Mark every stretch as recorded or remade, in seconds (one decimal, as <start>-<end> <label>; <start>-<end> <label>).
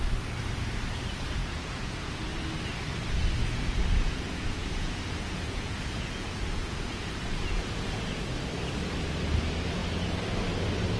0.0-1.4 recorded; 1.4-2.3 remade; 2.3-3.4 recorded; 3.4-8.4 remade; 8.4-11.0 recorded